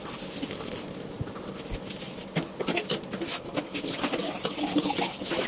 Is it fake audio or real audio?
real